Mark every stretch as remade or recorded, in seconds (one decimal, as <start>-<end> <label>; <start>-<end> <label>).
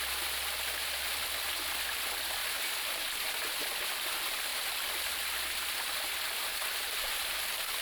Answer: 0.0-2.4 recorded; 2.4-3.0 remade; 3.0-7.8 recorded